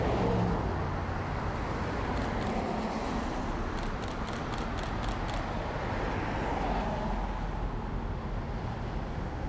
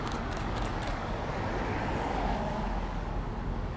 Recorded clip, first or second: first